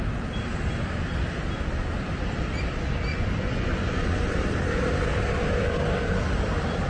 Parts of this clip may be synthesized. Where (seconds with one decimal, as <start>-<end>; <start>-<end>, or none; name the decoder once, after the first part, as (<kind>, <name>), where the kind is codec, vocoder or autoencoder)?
3.1-4.2 (vocoder, Vocos)